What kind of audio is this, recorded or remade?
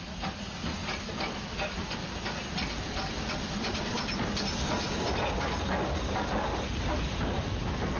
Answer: recorded